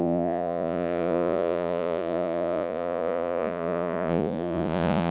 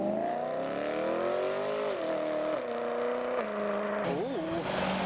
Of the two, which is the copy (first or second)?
first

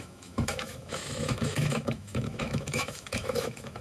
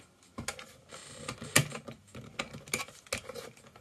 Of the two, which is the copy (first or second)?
first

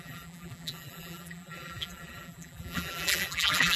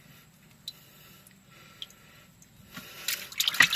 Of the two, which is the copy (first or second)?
first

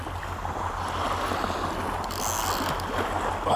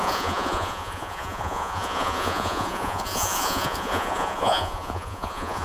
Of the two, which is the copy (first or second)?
second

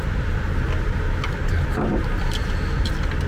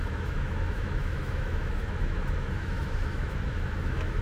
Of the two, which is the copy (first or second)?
second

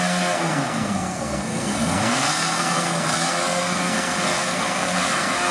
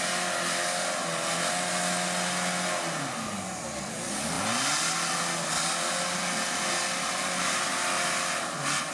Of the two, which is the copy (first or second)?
first